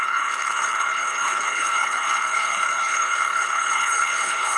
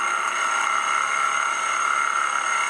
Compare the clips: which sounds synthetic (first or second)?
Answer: first